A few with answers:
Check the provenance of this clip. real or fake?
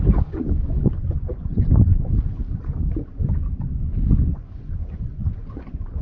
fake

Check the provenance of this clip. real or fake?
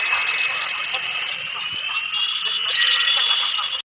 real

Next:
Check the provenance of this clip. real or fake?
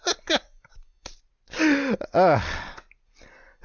real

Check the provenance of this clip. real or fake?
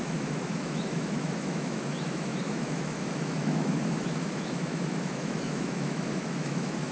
fake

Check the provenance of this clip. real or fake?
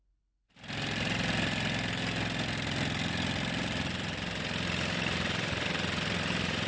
real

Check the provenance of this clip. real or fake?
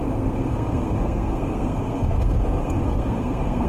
fake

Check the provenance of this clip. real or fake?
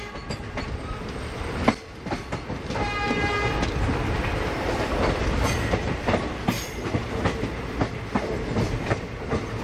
real